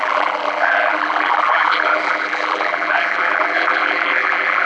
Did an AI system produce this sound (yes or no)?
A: yes